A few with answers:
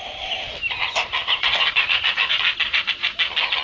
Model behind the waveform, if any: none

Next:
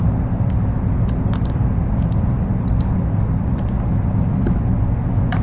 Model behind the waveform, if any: none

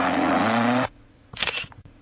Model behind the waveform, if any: vocoder, Vocos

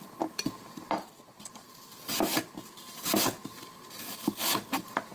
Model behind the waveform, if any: none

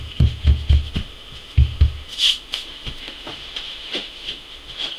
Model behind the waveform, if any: autoencoder, DAC-VAE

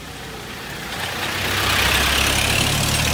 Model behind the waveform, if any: none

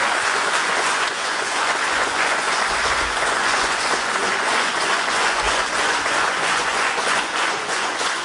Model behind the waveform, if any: vocoder, Vocos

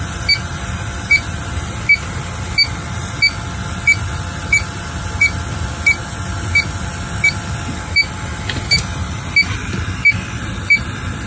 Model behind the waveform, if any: none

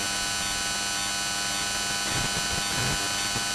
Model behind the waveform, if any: none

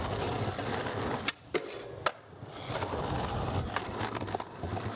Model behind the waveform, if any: none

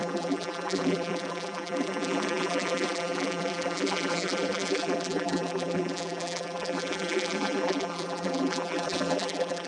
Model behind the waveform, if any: vocoder, BigVGAN v2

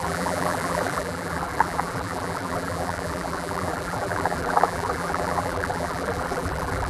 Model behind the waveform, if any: vocoder, BigVGAN v2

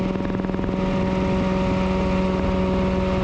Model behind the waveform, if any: none